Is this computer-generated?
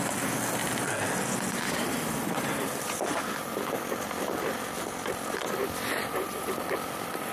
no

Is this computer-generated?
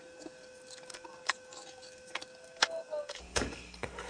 yes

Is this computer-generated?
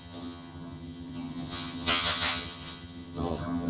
yes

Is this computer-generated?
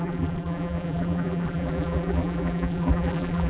yes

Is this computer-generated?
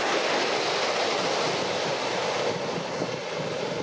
no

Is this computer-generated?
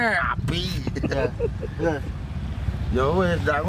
no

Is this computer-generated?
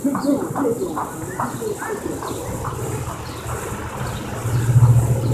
no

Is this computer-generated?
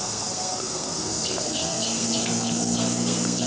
yes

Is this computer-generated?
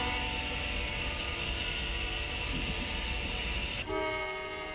no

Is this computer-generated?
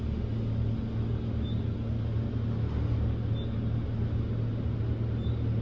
no